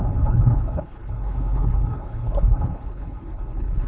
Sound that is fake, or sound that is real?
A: fake